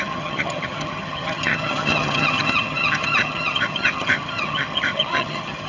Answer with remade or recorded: remade